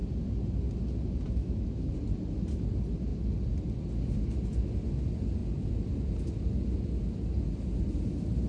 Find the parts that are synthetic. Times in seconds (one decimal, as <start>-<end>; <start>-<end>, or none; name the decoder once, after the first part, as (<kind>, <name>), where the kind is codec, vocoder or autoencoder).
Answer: 1.4-1.9 (autoencoder, DAC-VAE)